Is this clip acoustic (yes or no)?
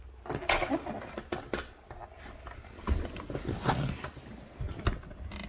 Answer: yes